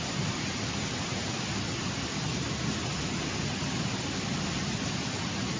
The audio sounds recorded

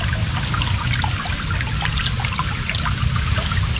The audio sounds recorded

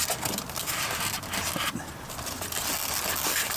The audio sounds recorded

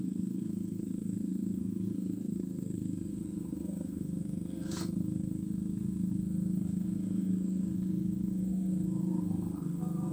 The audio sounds remade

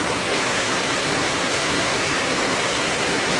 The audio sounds remade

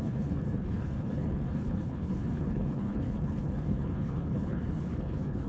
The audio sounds remade